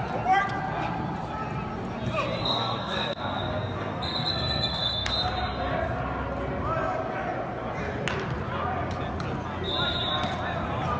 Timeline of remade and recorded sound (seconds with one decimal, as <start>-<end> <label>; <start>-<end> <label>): 0.0-2.4 recorded; 2.4-5.1 remade; 5.1-11.0 recorded